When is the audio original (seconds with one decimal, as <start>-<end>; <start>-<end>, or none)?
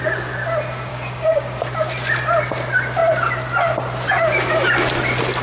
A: 0.0-0.9; 1.6-5.4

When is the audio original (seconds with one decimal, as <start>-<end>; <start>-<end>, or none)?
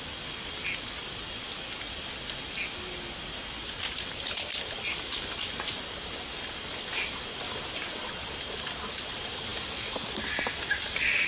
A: 0.0-11.3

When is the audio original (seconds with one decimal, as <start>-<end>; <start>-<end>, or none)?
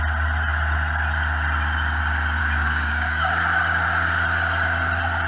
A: 0.0-2.4; 3.3-5.3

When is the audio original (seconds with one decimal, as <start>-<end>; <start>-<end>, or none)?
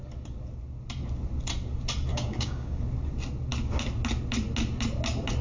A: 0.0-2.1; 2.8-5.4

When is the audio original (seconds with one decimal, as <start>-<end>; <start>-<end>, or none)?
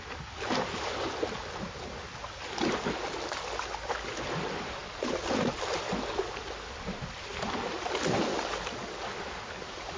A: 0.0-10.0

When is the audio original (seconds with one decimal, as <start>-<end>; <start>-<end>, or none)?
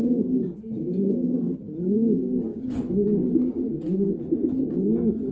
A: 0.0-2.5; 4.2-5.3